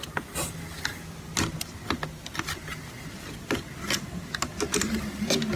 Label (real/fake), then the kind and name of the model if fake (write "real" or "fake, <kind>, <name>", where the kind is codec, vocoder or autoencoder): real